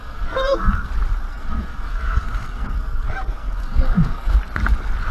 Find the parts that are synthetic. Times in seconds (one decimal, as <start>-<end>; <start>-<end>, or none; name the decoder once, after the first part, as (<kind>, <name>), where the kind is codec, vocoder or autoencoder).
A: 0.0-0.9 (codec, SNAC); 1.3-4.4